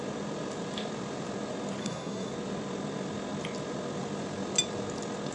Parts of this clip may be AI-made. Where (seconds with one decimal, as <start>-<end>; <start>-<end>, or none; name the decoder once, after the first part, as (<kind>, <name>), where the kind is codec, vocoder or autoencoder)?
1.8-2.3 (codec, SNAC)